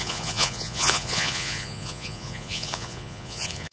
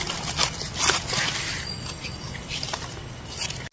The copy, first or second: first